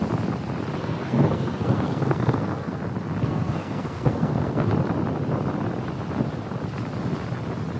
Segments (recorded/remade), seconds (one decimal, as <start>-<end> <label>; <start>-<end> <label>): 0.0-0.8 recorded; 0.8-2.8 remade; 2.8-3.2 recorded; 3.2-4.7 remade; 4.7-7.8 recorded